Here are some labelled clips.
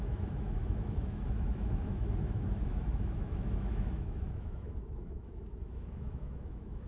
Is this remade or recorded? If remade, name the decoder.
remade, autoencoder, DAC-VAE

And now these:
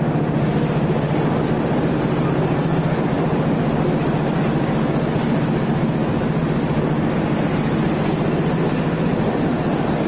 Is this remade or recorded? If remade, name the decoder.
recorded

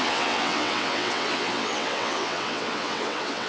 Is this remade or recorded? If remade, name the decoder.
remade, vocoder, WaveNeXt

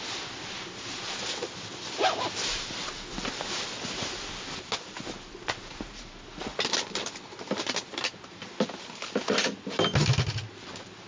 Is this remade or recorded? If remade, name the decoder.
recorded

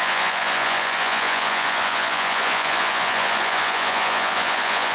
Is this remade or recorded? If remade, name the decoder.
remade, vocoder, Vocos